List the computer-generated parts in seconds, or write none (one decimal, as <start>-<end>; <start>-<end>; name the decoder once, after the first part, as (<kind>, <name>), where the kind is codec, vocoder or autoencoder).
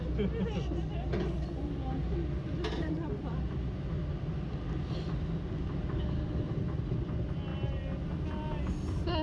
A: none